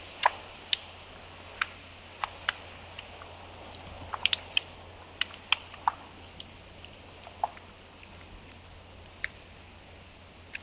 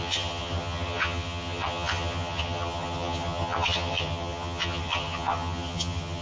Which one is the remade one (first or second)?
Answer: second